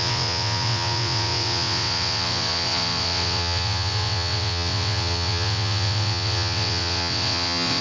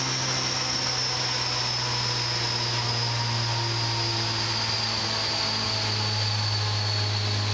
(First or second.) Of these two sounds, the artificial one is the first